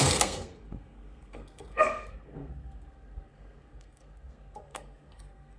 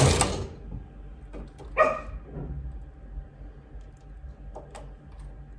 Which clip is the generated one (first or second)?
first